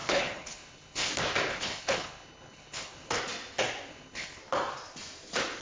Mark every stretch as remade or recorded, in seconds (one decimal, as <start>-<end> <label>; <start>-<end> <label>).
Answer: 0.0-1.1 remade; 1.1-1.5 recorded; 1.5-3.2 remade; 3.2-3.9 recorded; 3.9-4.4 remade; 4.4-5.6 recorded